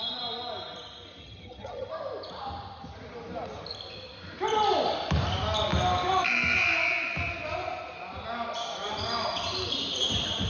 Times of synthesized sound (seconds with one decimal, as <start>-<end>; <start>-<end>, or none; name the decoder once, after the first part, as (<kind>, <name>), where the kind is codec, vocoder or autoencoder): 1.2-1.9 (vocoder, HiFi-GAN)